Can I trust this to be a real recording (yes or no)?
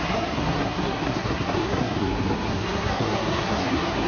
no